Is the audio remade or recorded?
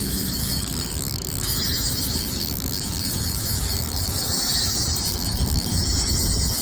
remade